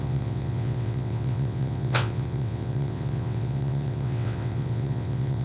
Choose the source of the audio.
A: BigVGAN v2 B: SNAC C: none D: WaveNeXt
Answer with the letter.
D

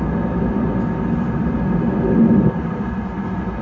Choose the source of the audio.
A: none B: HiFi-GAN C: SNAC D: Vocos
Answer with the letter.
A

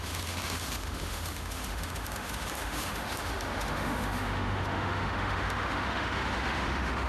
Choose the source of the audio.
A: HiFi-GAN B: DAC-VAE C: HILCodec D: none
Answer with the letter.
B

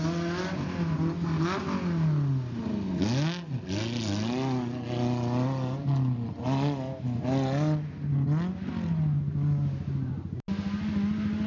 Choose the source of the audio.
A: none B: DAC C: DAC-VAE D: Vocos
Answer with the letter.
A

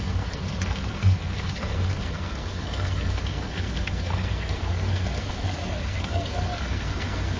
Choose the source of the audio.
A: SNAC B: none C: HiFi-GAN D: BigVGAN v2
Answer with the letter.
A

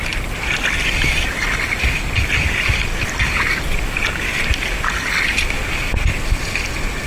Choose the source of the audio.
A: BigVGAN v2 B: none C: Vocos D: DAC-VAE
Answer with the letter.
B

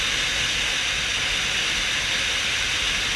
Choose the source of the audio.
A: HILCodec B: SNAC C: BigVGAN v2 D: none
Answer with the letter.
D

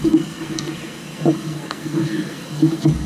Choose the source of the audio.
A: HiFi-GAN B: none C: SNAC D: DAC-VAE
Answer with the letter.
C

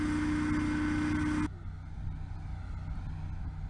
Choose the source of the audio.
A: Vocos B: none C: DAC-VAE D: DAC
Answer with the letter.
B